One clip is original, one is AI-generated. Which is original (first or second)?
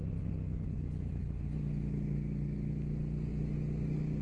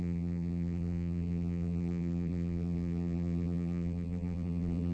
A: first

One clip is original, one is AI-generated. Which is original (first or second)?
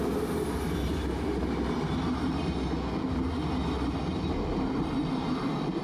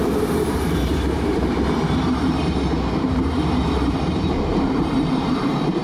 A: first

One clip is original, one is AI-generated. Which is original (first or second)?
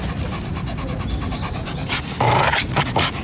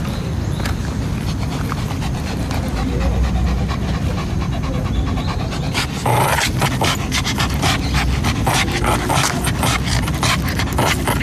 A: second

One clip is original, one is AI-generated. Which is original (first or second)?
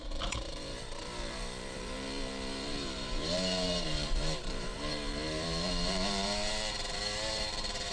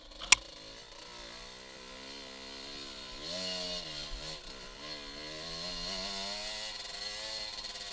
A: second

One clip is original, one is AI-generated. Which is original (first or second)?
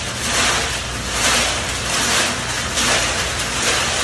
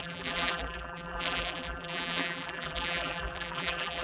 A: first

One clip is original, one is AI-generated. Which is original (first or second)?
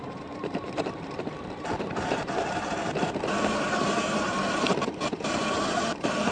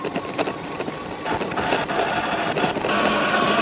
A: second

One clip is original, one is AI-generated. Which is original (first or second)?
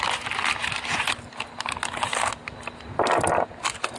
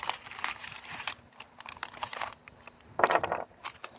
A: first